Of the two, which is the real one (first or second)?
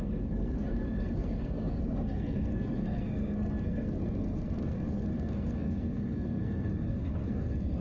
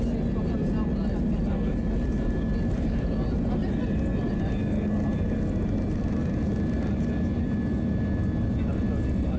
second